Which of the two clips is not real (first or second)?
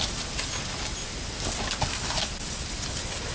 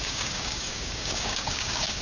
second